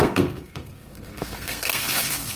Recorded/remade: remade